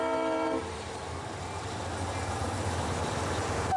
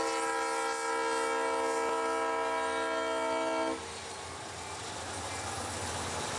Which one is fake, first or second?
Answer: first